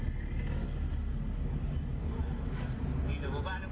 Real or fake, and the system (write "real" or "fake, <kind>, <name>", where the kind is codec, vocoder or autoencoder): real